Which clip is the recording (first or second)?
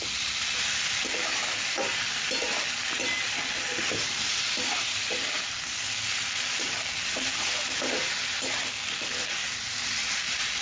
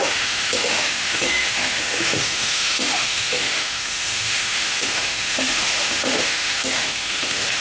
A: first